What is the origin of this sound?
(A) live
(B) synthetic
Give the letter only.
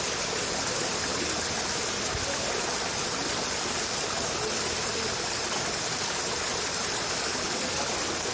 A